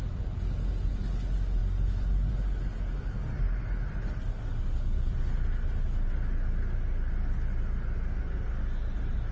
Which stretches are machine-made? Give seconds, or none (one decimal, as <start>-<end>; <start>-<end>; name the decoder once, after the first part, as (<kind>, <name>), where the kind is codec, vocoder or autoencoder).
none